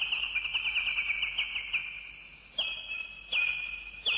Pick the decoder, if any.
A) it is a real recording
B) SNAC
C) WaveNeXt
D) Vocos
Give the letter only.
A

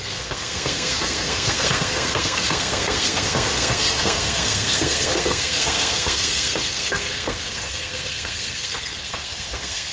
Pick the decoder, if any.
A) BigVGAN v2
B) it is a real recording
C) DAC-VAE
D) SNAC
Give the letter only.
D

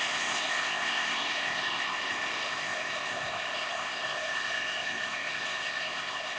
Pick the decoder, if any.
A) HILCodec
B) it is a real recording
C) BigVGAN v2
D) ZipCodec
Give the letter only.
D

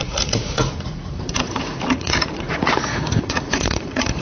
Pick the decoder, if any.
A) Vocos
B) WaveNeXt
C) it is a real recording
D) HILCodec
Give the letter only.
A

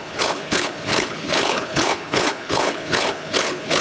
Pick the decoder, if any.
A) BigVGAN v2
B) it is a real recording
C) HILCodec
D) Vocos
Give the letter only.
C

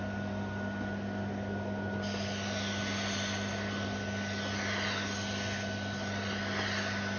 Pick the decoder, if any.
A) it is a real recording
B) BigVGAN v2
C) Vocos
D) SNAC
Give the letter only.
A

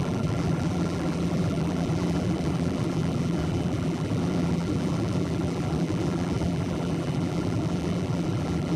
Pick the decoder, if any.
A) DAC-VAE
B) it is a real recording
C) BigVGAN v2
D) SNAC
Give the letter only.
C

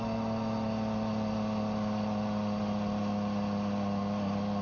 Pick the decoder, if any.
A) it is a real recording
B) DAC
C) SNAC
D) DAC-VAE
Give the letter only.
A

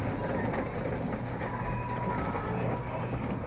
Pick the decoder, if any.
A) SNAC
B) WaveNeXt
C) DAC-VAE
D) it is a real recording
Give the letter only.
D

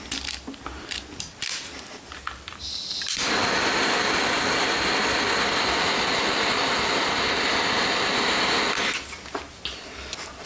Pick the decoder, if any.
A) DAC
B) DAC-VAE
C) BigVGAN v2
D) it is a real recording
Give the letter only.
D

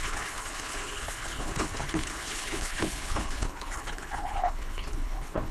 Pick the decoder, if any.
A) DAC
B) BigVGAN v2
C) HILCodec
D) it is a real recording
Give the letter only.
C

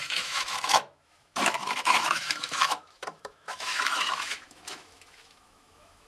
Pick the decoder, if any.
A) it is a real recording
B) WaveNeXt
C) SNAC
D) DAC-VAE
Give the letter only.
D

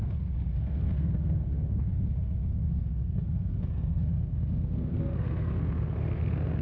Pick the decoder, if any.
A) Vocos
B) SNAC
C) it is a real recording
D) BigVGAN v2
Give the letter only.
B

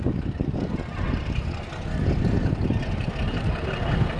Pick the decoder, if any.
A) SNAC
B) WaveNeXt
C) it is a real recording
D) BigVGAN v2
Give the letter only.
C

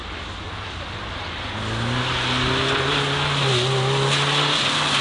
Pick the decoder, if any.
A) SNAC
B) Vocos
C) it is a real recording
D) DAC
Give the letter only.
C